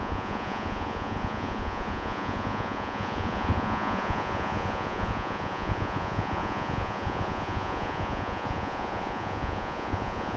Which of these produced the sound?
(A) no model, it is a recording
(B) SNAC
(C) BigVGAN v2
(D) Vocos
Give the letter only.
D